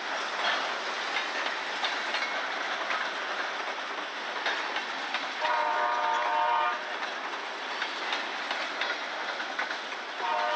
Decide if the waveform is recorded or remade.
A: recorded